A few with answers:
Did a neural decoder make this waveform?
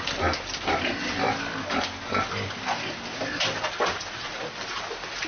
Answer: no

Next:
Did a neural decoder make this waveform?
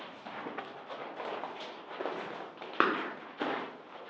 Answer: no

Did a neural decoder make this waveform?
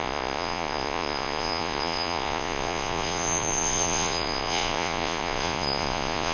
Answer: yes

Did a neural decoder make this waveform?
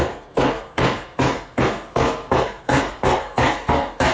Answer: yes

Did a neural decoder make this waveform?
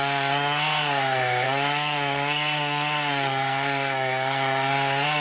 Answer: yes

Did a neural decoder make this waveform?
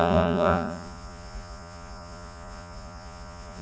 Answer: yes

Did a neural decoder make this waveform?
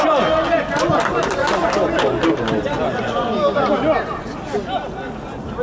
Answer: no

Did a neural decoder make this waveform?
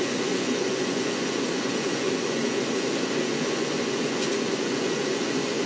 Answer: yes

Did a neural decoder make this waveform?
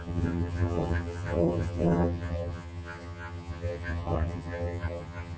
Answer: yes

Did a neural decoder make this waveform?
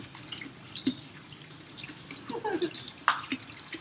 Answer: no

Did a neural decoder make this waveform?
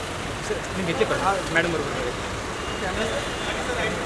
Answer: no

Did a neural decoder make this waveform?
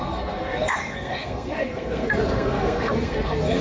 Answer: yes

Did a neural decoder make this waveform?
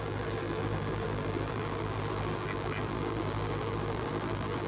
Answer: yes